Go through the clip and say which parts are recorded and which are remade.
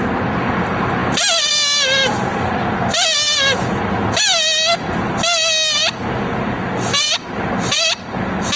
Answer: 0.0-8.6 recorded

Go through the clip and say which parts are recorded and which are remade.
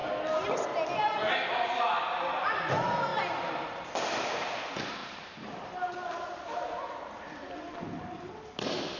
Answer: 0.0-3.1 recorded; 3.1-3.9 remade; 3.9-5.0 recorded; 5.0-8.3 remade; 8.3-9.0 recorded